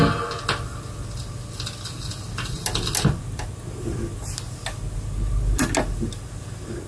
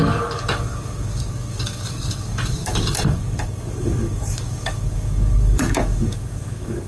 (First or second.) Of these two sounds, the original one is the first